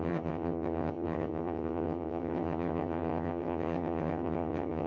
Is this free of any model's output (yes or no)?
no